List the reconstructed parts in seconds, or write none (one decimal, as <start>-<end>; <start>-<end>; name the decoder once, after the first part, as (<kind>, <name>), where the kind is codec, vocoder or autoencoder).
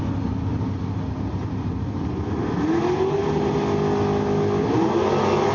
none